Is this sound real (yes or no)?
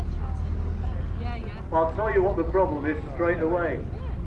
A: yes